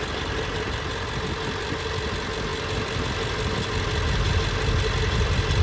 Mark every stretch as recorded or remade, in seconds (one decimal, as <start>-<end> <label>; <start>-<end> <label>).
0.0-5.6 recorded